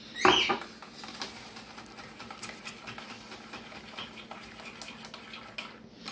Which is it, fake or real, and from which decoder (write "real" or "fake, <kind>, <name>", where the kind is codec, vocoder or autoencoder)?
real